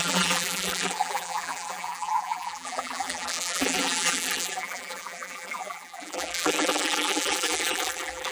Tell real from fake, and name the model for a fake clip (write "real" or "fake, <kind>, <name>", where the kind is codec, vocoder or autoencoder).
fake, vocoder, BigVGAN v2